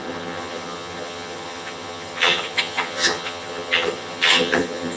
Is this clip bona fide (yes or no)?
no